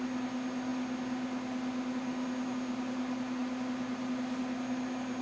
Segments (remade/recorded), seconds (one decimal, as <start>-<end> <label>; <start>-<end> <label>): 0.0-5.2 recorded